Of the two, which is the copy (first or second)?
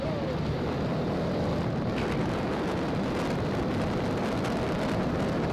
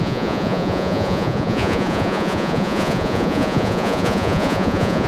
second